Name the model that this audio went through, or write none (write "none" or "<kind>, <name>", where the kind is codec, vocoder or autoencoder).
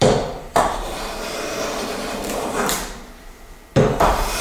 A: vocoder, BigVGAN v2